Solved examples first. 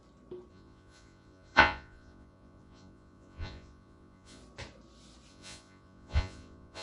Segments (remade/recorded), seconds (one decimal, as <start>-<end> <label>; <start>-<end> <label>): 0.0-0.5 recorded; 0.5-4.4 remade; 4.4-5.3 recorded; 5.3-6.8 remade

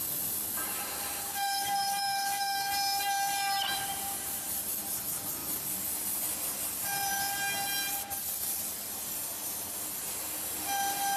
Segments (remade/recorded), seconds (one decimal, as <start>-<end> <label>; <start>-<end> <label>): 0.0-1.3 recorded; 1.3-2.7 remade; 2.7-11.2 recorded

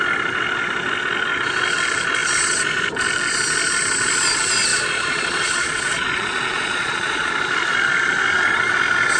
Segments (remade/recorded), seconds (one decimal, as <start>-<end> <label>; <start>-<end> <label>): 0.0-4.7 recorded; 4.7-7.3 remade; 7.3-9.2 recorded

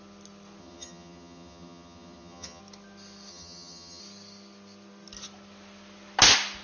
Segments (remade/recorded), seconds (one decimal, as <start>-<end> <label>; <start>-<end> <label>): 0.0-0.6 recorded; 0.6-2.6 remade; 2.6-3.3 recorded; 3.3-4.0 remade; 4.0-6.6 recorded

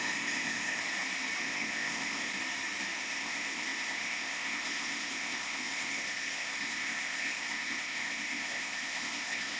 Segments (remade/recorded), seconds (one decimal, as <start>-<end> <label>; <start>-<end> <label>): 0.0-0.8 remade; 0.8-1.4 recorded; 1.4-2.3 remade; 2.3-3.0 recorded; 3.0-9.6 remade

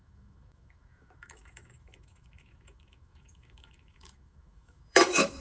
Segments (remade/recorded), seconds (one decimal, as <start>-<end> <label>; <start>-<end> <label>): 0.0-5.4 remade

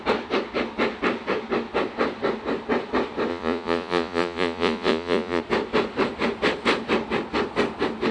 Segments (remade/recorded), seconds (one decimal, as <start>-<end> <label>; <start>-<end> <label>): 0.0-3.3 recorded; 3.3-5.4 remade; 5.4-8.1 recorded